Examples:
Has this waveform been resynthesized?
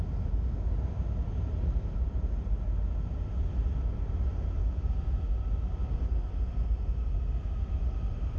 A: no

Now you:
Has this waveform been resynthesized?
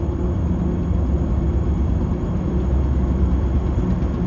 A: no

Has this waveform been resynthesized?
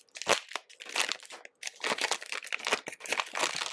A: no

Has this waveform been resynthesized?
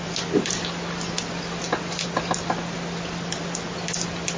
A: no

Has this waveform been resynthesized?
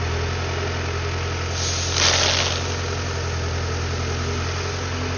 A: no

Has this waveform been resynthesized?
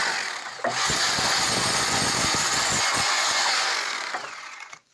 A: yes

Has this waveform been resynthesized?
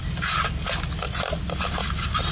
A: no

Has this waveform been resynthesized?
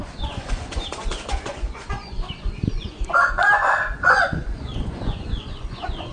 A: yes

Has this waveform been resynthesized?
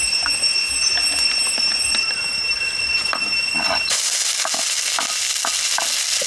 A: no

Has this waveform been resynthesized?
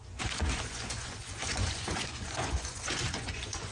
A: yes